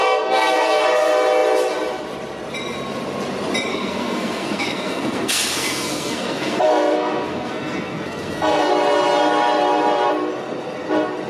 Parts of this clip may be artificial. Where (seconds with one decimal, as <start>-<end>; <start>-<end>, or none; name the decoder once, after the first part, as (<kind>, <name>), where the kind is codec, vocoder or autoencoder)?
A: 0.0-0.8 (codec, SNAC); 3.7-8.7